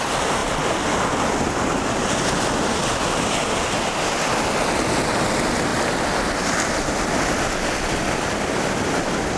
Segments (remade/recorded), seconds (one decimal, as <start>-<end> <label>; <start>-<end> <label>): 0.0-9.4 recorded